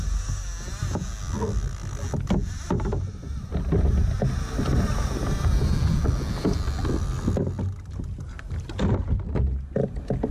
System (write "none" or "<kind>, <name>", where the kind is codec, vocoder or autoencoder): none